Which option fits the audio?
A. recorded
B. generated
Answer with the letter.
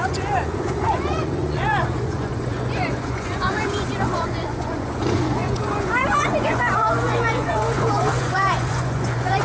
B